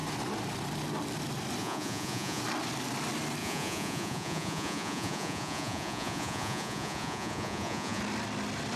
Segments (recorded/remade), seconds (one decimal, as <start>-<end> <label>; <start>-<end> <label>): 0.0-1.6 recorded; 1.6-2.4 remade; 2.4-3.4 recorded; 3.4-8.0 remade; 8.0-8.8 recorded